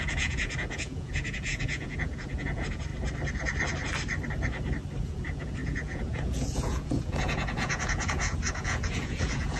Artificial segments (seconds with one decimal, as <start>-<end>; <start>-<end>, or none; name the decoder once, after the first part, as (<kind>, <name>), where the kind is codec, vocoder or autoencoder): 0.0-2.9 (vocoder, Vocos); 5.0-9.6